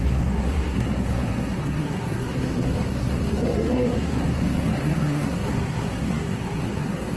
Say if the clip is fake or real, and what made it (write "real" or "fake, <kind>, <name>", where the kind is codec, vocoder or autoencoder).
fake, codec, SNAC